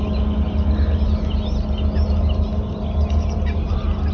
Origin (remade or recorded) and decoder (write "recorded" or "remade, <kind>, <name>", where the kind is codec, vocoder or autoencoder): recorded